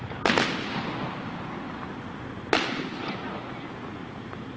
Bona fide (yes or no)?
yes